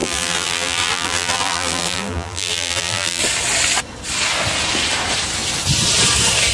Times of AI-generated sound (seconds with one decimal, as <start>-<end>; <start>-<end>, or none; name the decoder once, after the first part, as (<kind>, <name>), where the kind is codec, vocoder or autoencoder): 0.0-3.2 (vocoder, BigVGAN v2)

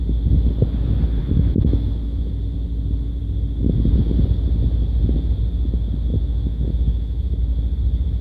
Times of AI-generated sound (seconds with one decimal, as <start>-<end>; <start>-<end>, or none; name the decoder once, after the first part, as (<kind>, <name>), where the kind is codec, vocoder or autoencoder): 1.2-2.3 (autoencoder, DAC-VAE); 6.1-7.4

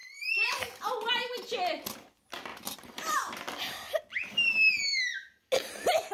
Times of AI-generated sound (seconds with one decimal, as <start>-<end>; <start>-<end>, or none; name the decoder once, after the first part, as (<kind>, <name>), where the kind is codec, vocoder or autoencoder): 0.0-1.1 (vocoder, BigVGAN v2); 2.5-4.0

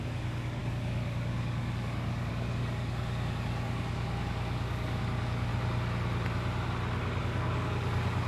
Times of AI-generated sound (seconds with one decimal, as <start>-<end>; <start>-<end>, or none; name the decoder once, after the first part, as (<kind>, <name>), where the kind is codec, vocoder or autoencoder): 0.0-5.5 (codec, DAC); 7.2-8.3

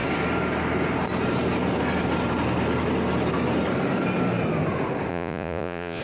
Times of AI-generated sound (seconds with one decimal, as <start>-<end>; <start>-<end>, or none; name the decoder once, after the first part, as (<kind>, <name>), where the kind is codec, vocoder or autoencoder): 5.1-6.0 (vocoder, Vocos)

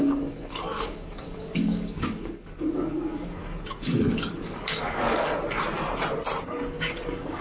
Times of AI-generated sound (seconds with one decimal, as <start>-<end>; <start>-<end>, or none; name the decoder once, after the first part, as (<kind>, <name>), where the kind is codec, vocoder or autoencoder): 0.0-5.3 (codec, DAC); 6.4-7.4

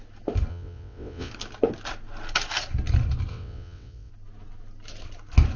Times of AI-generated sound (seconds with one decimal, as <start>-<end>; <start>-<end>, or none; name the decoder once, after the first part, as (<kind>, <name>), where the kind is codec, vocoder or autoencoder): 0.5-1.3 (vocoder, WaveNeXt); 3.3-4.1

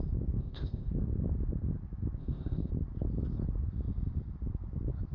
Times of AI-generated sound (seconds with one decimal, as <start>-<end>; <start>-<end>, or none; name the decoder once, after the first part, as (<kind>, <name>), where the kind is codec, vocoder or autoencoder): 0.4-0.9 (codec, ZipCodec); 2.2-2.7